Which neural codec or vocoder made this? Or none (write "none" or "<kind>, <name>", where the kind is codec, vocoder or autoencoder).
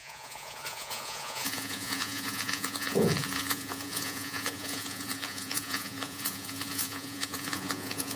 vocoder, Vocos